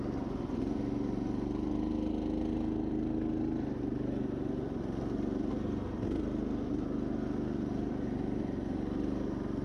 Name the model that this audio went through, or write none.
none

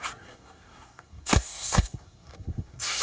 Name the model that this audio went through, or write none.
codec, SNAC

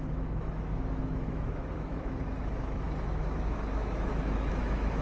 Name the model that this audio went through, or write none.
autoencoder, DAC-VAE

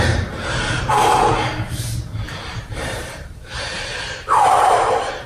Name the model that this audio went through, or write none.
vocoder, BigVGAN v2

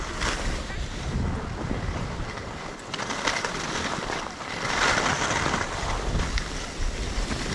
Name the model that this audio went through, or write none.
none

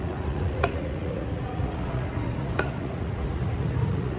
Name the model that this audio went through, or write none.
vocoder, Vocos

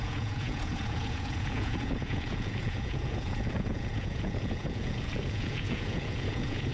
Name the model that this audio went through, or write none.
vocoder, Vocos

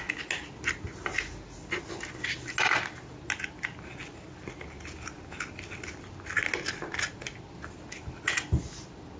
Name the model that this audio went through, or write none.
none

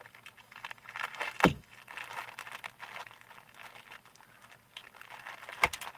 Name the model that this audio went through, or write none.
none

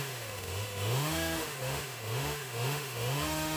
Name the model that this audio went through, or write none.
autoencoder, DAC-VAE